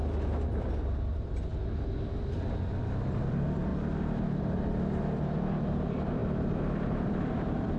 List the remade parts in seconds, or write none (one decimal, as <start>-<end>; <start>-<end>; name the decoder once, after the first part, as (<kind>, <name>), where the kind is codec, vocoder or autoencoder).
0.5-1.5 (vocoder, BigVGAN v2); 2.8-3.7; 4.4-7.8